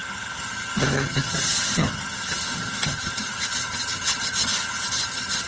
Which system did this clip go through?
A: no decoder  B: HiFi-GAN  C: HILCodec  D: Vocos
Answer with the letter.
B